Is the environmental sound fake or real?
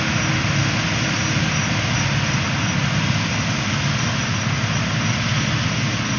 real